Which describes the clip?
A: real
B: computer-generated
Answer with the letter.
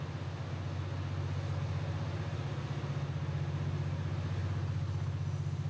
A